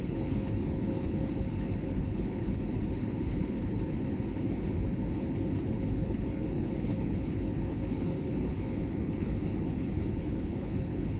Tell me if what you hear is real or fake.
fake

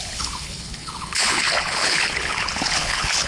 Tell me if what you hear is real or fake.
fake